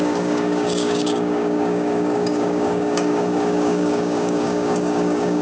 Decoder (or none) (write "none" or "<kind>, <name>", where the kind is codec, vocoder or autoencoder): codec, DAC